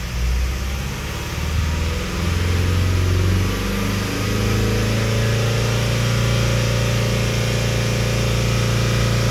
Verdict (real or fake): real